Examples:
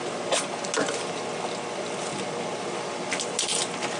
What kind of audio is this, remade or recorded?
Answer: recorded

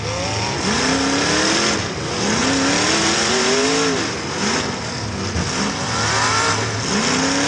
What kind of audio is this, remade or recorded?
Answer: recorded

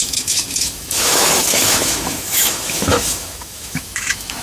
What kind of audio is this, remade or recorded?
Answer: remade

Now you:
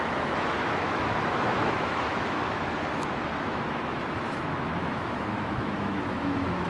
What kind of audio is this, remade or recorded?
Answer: remade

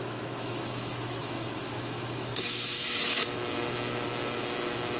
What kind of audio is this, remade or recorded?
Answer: remade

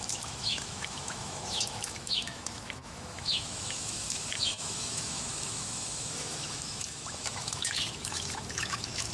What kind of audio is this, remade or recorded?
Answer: remade